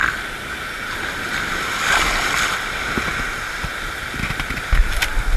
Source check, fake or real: real